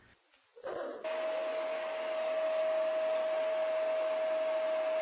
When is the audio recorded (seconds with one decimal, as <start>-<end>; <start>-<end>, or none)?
0.0-5.0